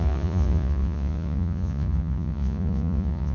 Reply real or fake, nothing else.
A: fake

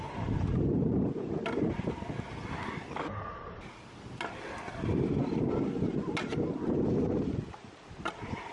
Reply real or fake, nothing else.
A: real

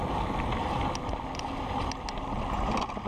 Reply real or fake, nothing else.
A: real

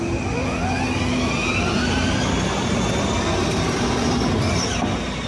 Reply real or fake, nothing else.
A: real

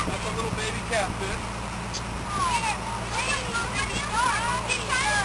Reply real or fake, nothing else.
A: real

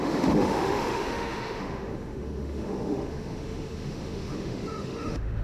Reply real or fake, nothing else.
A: fake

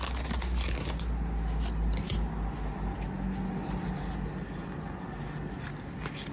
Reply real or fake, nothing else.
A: real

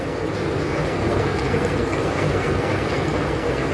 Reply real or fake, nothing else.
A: fake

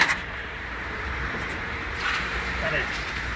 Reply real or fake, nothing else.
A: fake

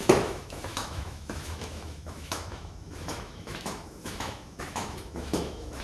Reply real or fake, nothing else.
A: fake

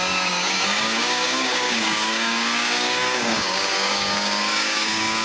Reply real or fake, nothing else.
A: fake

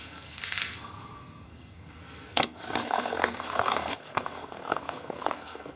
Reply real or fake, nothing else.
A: fake